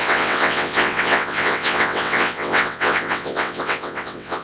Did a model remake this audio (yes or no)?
yes